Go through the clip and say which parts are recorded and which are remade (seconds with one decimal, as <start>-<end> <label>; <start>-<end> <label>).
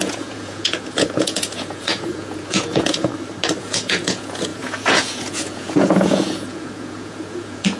0.0-3.1 remade; 3.1-3.6 recorded; 3.6-7.8 remade